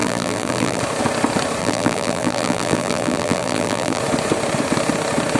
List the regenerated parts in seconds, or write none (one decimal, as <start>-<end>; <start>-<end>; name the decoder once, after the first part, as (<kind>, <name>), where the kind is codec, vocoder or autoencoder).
0.0-0.8 (vocoder, BigVGAN v2); 1.6-4.0